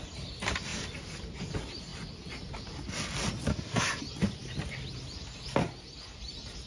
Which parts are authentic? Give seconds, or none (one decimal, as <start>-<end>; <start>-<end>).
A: 0.0-3.5; 4.0-6.7